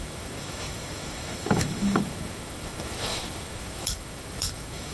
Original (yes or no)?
no